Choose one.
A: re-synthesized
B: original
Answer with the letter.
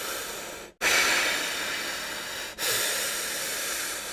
B